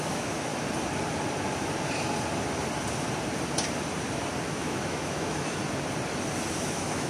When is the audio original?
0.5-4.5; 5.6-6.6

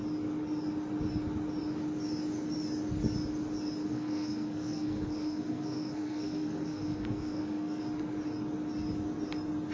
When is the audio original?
0.0-3.8; 7.8-9.7

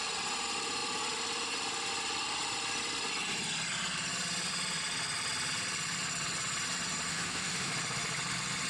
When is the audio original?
0.0-7.1; 7.7-8.7

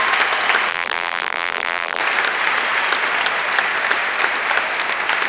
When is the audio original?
0.0-0.7; 2.0-5.3

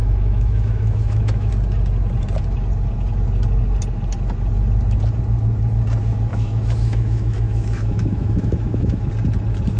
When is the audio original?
1.5-6.3; 9.1-9.8

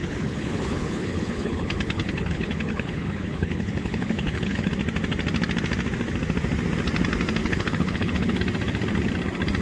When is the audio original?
4.7-7.4; 8.4-9.6